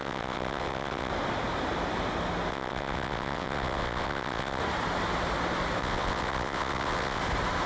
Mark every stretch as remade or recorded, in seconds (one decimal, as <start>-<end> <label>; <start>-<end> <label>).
0.0-1.1 remade; 1.1-2.5 recorded; 2.5-4.6 remade; 4.6-5.8 recorded; 5.8-7.2 remade; 7.2-7.7 recorded